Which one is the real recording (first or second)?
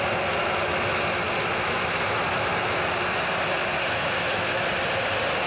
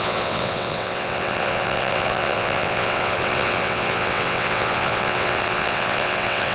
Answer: first